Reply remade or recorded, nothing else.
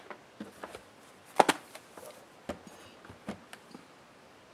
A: recorded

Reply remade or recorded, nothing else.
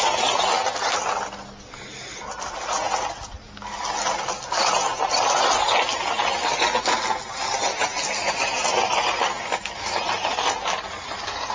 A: recorded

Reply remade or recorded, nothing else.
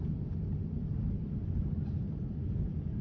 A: recorded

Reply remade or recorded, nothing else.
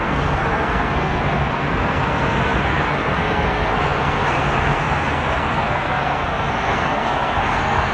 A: remade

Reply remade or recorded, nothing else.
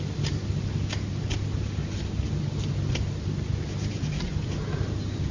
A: recorded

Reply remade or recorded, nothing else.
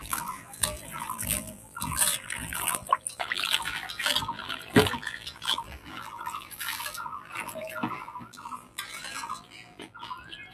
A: remade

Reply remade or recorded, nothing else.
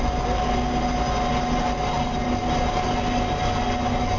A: recorded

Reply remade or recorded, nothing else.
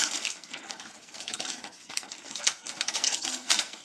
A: remade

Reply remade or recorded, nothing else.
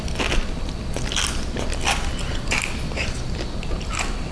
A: recorded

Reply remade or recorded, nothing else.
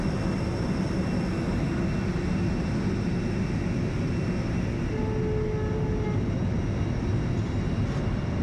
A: recorded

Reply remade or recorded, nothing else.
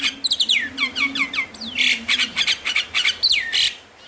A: recorded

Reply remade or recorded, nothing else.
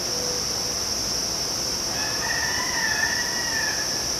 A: recorded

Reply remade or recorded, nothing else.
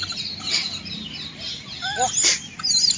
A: remade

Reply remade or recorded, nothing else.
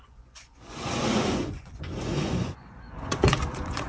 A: remade